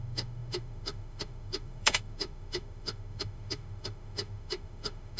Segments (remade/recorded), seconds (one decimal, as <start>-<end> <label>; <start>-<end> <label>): 0.0-5.2 remade

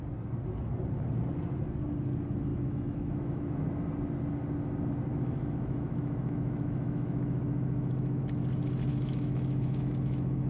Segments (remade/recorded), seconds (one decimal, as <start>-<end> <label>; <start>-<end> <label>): 0.0-2.5 recorded; 2.5-3.6 remade; 3.6-5.1 recorded; 5.1-8.2 remade; 8.2-8.9 recorded; 8.9-10.5 remade

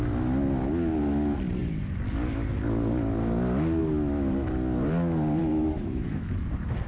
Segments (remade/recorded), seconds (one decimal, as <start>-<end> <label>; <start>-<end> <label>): 0.0-5.4 recorded; 5.4-6.3 remade; 6.3-6.9 recorded

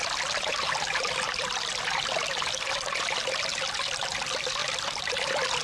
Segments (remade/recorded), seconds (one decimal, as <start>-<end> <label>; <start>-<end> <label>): 0.0-5.6 recorded